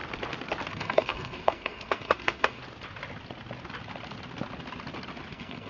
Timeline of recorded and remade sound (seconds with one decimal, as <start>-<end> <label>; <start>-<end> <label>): 0.0-0.7 recorded; 0.7-2.6 remade; 2.6-5.3 recorded; 5.3-5.7 remade